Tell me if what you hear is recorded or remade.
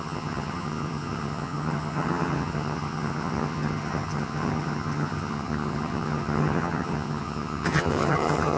remade